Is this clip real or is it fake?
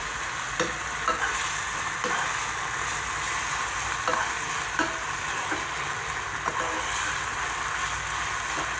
real